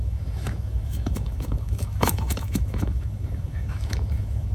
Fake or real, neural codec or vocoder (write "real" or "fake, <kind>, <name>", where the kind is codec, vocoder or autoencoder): fake, autoencoder, DAC-VAE